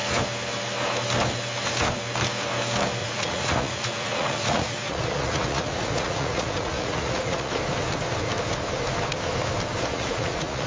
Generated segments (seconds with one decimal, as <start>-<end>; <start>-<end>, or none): 3.0-7.5; 9.9-10.7